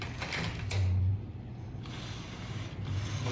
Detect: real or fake real